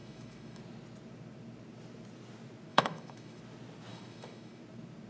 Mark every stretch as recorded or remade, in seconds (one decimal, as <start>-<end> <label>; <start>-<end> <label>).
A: 0.0-0.6 remade; 0.6-2.7 recorded; 2.7-3.4 remade; 3.4-3.9 recorded; 3.9-4.6 remade; 4.6-5.1 recorded

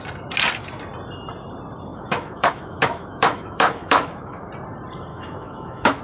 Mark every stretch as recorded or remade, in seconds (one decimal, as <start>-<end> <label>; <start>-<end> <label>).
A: 0.0-1.9 recorded; 1.9-4.5 remade; 4.5-5.1 recorded; 5.1-6.0 remade

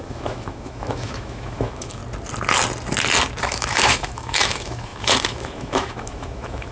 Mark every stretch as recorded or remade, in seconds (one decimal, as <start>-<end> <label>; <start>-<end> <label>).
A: 0.0-2.0 remade; 2.0-3.4 recorded; 3.4-6.7 remade

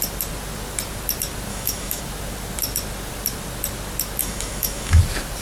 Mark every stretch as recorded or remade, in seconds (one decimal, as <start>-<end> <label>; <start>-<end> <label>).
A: 0.0-1.5 recorded; 1.5-2.0 remade; 2.0-4.2 recorded; 4.2-5.0 remade; 5.0-5.4 recorded

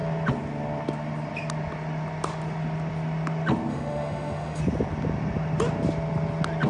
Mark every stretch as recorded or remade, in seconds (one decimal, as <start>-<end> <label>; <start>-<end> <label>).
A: 0.0-3.7 recorded; 3.7-4.6 remade; 4.6-6.7 recorded

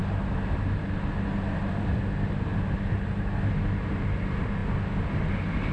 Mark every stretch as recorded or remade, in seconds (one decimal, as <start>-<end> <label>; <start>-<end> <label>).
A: 0.0-5.7 recorded

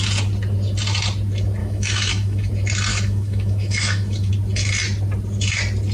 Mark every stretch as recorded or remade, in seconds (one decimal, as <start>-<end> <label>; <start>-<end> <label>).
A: 0.0-1.6 recorded; 1.6-2.5 remade; 2.5-2.9 recorded; 2.9-4.3 remade; 4.3-5.9 recorded